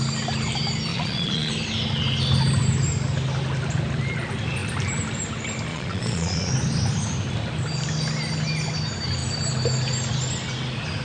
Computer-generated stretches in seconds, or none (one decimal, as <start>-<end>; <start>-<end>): 0.9-1.5; 5.7-6.5